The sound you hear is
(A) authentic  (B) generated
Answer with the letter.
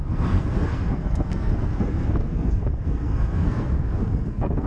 B